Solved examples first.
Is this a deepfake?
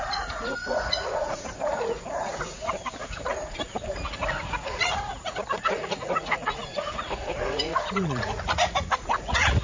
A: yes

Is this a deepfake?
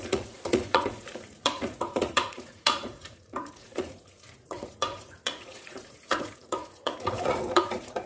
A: yes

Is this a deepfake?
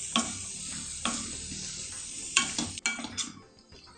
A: no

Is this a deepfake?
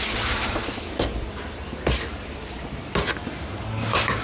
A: no